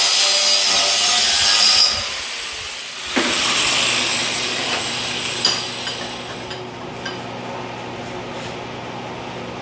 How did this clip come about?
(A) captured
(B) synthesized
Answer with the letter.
A